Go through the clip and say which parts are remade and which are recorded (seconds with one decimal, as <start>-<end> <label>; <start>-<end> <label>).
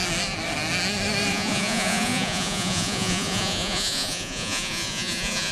0.0-1.3 recorded; 1.3-5.5 remade